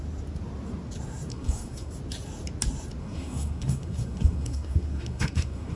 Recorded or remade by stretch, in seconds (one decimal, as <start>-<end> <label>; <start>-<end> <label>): 0.0-1.3 recorded; 1.3-1.9 remade; 1.9-3.0 recorded; 3.0-5.8 remade